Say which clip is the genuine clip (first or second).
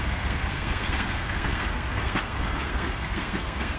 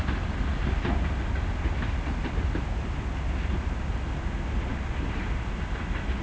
second